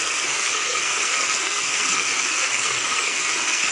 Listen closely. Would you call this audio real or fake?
fake